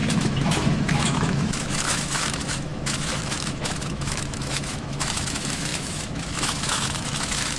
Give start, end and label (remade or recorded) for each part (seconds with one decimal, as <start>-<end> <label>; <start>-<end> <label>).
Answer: 0.0-7.6 remade